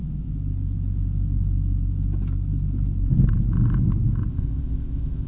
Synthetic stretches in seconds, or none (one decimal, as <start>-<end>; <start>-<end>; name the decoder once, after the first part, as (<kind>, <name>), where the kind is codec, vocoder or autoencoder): 4.3-5.3 (codec, ZipCodec)